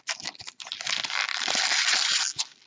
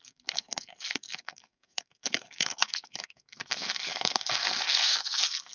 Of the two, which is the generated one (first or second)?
second